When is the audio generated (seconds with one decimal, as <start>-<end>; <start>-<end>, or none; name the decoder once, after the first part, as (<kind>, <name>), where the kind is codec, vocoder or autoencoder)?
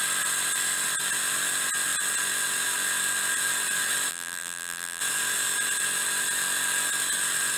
4.1-5.0 (vocoder, BigVGAN v2)